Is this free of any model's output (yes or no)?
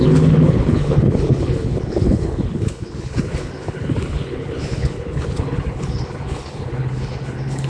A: no